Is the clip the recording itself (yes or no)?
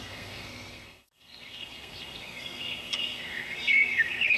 no